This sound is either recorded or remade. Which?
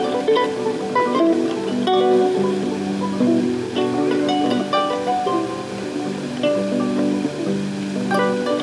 recorded